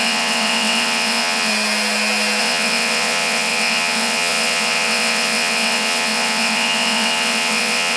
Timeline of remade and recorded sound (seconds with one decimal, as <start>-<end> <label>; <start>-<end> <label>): 0.0-1.5 remade; 1.5-2.4 recorded; 2.4-8.0 remade

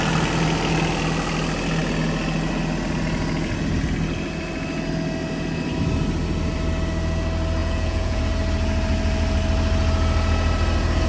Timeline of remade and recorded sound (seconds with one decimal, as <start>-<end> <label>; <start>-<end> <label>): 0.0-7.6 recorded; 7.6-8.2 remade; 8.2-11.1 recorded

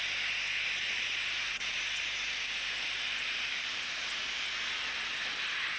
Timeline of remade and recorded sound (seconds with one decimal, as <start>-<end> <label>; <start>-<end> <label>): 0.0-0.8 recorded; 0.8-4.3 remade; 4.3-5.8 recorded

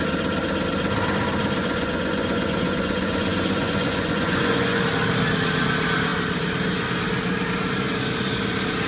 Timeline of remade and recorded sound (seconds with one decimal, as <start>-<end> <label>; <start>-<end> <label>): 0.0-1.6 recorded; 1.6-4.8 remade; 4.8-8.9 recorded

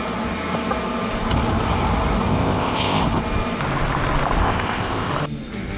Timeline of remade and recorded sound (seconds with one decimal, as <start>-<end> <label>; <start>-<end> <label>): 0.0-2.3 recorded; 2.3-3.0 remade; 3.0-4.4 recorded; 4.4-5.1 remade; 5.1-5.8 recorded

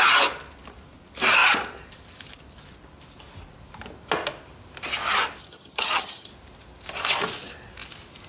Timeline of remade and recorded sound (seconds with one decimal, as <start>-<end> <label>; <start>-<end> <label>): 0.0-5.4 recorded; 5.4-6.3 remade; 6.3-8.3 recorded

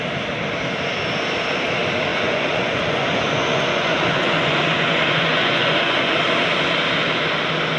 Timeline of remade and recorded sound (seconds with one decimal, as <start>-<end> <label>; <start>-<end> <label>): 0.0-2.1 recorded; 2.1-6.1 remade; 6.1-7.8 recorded

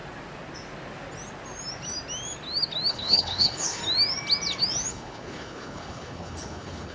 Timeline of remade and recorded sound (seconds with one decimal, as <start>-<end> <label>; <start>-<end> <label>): 0.0-2.9 recorded; 2.9-3.8 remade; 3.8-4.9 recorded; 4.9-6.9 remade